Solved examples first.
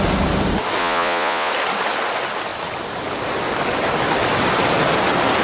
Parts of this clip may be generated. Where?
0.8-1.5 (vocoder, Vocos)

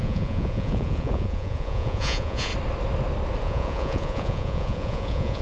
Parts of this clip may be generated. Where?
0.0-2.5 (vocoder, Vocos); 3.4-5.4

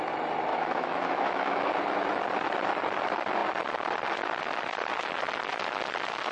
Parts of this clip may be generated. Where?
0.5-1.7 (autoencoder, DAC-VAE)

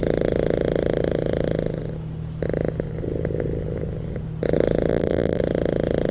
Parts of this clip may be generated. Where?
4.9-5.4 (vocoder, BigVGAN v2)

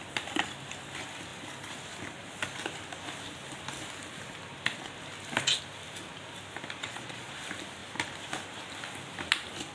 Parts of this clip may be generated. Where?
6.8-7.3 (vocoder, Vocos)

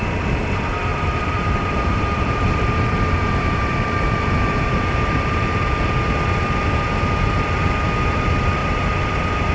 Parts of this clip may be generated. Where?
0.9-5.9 (vocoder, BigVGAN v2); 8.6-9.5